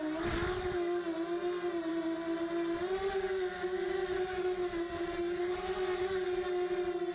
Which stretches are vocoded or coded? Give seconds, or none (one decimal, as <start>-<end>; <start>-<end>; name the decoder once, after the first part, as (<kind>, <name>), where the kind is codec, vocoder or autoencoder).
none